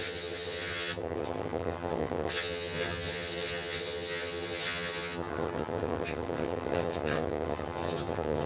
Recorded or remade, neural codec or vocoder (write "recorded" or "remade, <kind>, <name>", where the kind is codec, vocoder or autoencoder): remade, vocoder, HiFi-GAN